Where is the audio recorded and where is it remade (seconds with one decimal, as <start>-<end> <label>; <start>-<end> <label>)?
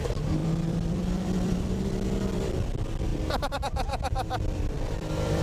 0.0-5.4 remade